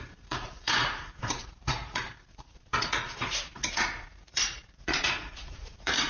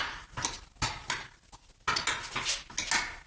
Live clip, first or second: second